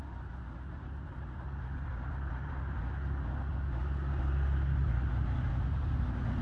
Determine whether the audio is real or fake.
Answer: real